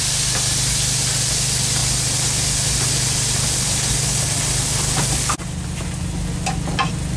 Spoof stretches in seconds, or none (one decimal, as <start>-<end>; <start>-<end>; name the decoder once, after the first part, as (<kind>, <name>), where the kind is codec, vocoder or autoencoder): none